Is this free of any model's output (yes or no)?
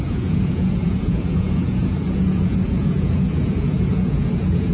no